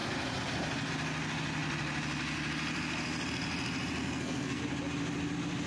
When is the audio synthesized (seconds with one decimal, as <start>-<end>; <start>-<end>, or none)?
4.0-4.6

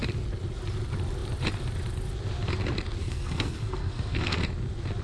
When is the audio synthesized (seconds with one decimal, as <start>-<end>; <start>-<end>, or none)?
3.0-4.4

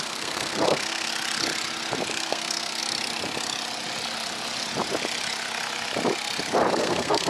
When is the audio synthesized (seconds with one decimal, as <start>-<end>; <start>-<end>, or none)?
0.0-1.1; 2.1-2.8; 6.8-7.3

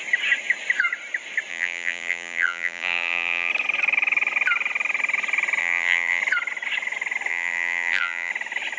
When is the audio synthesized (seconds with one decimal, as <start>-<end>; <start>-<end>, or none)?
1.5-3.5; 5.6-6.2; 7.3-8.3

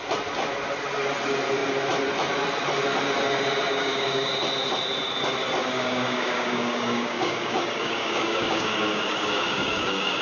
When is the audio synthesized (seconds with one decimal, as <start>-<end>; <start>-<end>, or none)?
3.7-4.3; 5.6-10.2

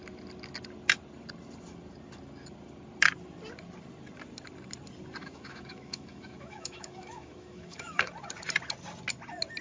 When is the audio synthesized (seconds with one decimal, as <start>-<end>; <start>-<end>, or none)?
5.2-8.1